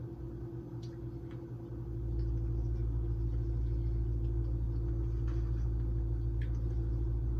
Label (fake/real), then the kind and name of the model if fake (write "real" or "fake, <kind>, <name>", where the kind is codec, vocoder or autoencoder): real